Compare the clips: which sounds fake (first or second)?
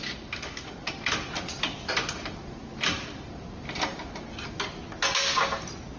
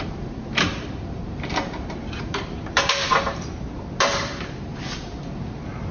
second